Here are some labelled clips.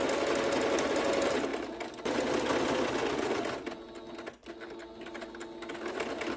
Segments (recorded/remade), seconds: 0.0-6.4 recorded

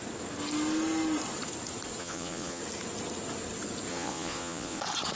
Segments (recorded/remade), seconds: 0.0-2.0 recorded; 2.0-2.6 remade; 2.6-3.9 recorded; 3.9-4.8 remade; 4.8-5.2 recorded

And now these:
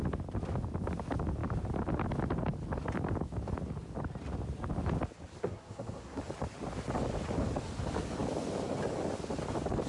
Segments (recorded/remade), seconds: 0.0-5.4 recorded; 5.4-6.2 remade; 6.2-9.9 recorded

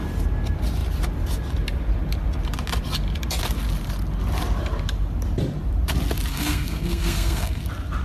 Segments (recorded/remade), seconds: 0.0-6.3 recorded; 6.3-7.6 remade; 7.6-8.0 recorded

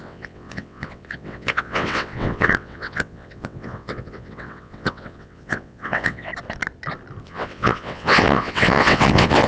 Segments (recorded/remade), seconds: 0.0-6.3 remade; 6.3-7.2 recorded; 7.2-9.5 remade

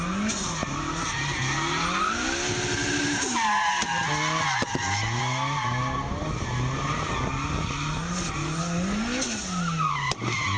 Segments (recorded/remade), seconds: 0.0-10.6 recorded